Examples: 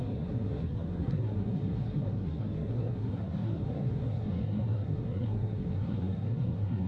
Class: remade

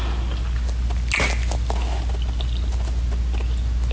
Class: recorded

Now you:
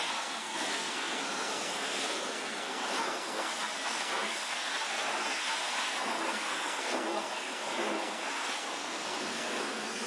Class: remade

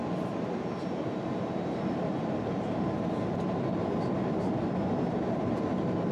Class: recorded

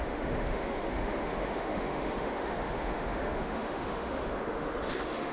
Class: remade